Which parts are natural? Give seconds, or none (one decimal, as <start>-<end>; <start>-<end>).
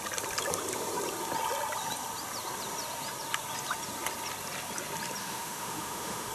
0.0-5.2